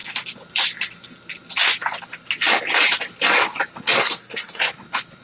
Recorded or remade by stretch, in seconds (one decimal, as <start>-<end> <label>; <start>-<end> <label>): 0.0-4.0 recorded; 4.0-4.6 remade; 4.6-5.2 recorded